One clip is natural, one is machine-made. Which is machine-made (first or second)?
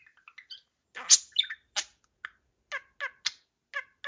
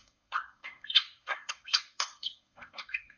second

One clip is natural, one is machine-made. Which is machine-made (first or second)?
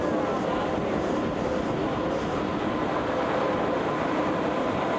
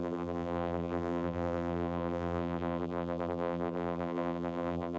second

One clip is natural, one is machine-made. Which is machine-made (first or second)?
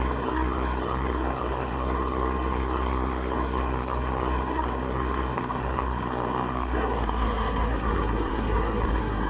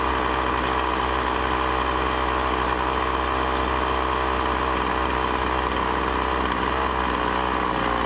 first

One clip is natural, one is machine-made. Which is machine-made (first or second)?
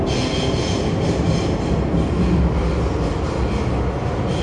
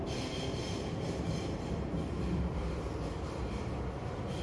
second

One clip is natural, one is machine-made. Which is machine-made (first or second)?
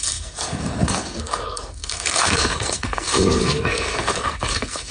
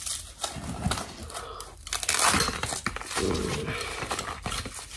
first